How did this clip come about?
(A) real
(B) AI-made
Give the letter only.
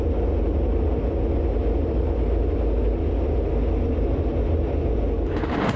A